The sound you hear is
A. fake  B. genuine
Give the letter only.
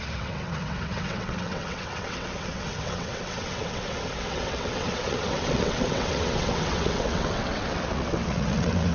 A